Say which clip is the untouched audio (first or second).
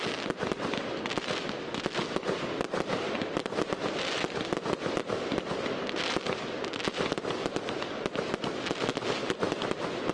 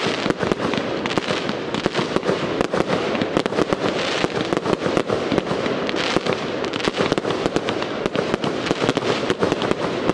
first